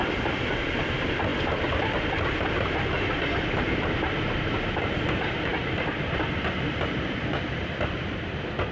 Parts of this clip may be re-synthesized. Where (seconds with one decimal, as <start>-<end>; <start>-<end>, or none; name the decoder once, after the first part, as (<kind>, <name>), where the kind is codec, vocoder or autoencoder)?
0.0-1.3 (vocoder, BigVGAN v2); 3.1-8.7